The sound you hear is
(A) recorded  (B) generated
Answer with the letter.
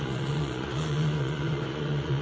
B